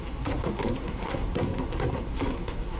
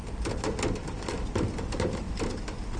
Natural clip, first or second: second